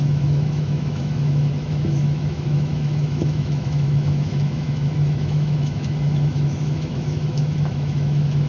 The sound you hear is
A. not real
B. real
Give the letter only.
A